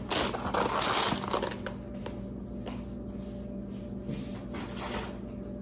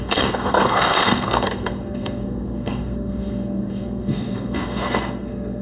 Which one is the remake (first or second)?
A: second